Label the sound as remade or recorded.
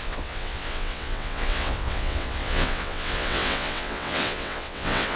remade